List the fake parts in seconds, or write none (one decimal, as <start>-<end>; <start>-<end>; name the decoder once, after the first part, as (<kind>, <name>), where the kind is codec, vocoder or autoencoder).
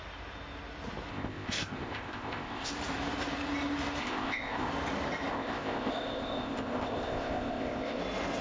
1.1-2.7 (codec, ZipCodec); 4.0-4.7; 5.3-8.0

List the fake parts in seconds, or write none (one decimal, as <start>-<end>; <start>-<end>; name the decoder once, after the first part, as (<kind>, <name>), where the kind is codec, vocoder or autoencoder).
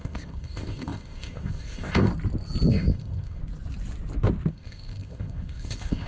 0.0-2.1 (codec, ZipCodec); 2.7-3.4; 4.5-6.1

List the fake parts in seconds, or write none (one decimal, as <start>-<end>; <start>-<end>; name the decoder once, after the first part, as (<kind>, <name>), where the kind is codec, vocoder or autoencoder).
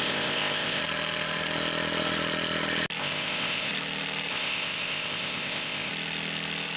0.0-0.8 (codec, ZipCodec); 3.0-3.7; 4.3-5.9